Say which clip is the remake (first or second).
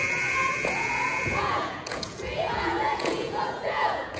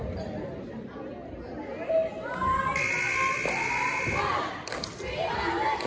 first